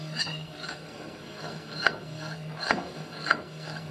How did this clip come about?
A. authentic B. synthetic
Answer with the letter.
B